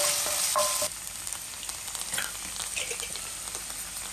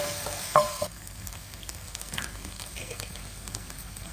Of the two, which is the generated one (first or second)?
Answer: second